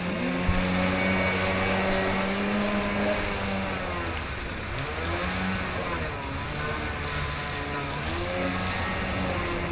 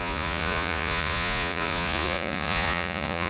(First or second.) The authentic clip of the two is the first